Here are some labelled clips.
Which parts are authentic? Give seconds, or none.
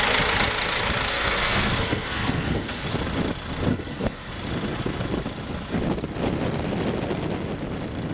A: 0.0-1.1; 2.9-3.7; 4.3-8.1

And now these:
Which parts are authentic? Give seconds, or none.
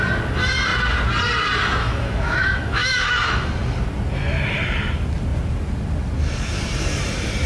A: 0.0-1.8; 3.5-7.5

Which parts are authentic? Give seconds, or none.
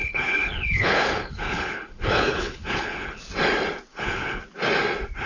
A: 3.2-3.9; 4.4-5.3